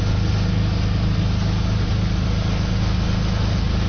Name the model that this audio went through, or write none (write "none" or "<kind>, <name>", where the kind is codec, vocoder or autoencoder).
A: none